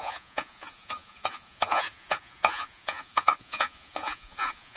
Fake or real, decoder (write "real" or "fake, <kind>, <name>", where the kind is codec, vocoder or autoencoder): fake, vocoder, Vocos